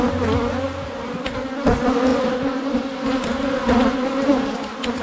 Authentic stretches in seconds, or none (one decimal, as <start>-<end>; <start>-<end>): 0.0-5.0